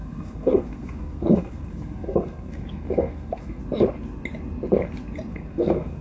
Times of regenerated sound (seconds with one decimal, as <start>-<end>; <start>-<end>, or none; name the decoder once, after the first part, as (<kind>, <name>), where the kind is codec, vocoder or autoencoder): 0.0-3.6 (codec, SNAC); 5.3-6.0